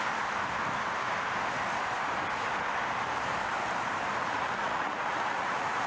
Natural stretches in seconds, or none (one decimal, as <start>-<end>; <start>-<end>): 0.0-4.2